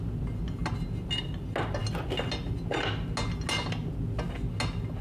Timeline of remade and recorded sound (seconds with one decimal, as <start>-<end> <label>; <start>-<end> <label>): 0.0-5.0 recorded

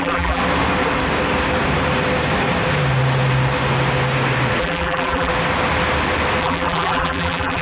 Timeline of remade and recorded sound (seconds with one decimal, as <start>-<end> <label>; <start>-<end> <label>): 0.0-0.4 remade; 0.4-4.6 recorded; 4.6-5.3 remade; 5.3-6.4 recorded; 6.4-7.6 remade

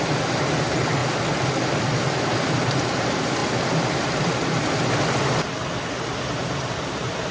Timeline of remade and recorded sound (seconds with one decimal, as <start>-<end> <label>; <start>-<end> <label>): 0.0-1.0 remade; 1.0-2.4 recorded; 2.4-3.4 remade; 3.4-6.2 recorded; 6.2-7.3 remade

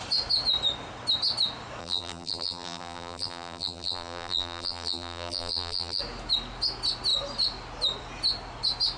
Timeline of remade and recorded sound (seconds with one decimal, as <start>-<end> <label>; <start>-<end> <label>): 0.0-1.8 recorded; 1.8-6.0 remade; 6.0-9.0 recorded

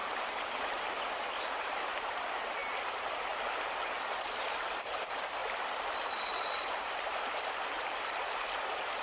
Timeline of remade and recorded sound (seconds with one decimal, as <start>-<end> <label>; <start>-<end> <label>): 0.0-1.3 recorded; 1.3-2.6 remade; 2.6-4.2 recorded; 4.2-9.0 remade

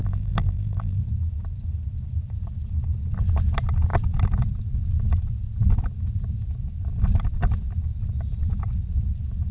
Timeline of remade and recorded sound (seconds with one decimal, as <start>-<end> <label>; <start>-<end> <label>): 0.0-1.0 remade; 1.0-9.5 recorded